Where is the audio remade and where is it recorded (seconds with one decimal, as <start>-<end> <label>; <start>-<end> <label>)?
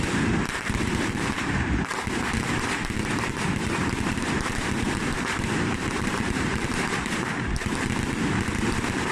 0.0-1.9 remade; 1.9-2.6 recorded; 2.6-7.7 remade; 7.7-8.3 recorded; 8.3-9.1 remade